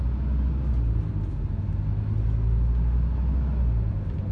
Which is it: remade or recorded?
recorded